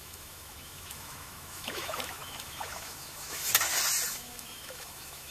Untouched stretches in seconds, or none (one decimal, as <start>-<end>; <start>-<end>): 3.5-4.1